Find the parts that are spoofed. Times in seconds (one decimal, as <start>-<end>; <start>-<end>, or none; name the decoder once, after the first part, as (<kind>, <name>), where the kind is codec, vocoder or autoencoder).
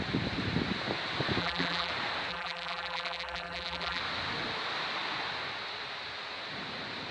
1.4-1.9 (vocoder, BigVGAN v2); 2.3-4.0